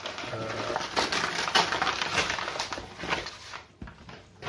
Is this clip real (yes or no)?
yes